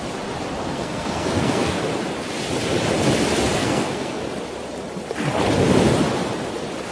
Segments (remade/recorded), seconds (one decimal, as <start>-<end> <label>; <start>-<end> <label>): 0.0-0.6 recorded; 0.6-1.8 remade; 1.8-3.6 recorded; 3.6-4.2 remade; 4.2-6.9 recorded

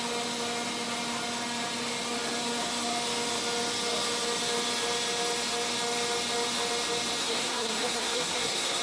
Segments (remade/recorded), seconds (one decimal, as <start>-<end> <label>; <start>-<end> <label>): 0.0-7.2 recorded; 7.2-8.8 remade

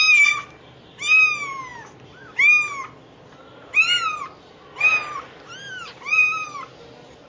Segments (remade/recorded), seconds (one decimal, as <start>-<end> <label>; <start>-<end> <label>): 0.0-7.3 recorded

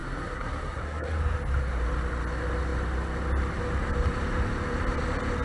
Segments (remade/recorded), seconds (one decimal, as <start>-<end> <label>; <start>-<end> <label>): 0.0-1.2 remade; 1.2-5.4 recorded

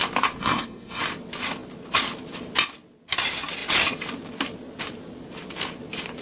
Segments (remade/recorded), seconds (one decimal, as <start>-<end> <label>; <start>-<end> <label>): 0.0-0.4 recorded; 0.4-1.0 remade; 1.0-6.2 recorded

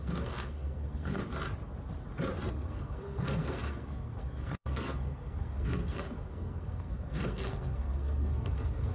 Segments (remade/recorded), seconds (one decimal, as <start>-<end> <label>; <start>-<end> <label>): 0.0-1.2 remade; 1.2-2.5 recorded; 2.5-8.9 remade